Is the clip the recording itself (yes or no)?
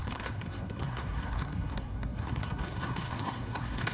no